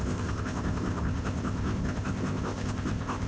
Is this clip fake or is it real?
fake